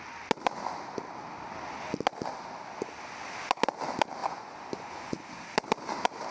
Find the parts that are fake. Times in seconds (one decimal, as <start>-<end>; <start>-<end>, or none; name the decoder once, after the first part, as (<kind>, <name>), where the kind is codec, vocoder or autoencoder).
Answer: 4.2-5.2 (vocoder, Vocos)